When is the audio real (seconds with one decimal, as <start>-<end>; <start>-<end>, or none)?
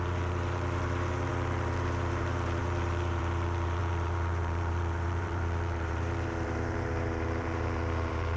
none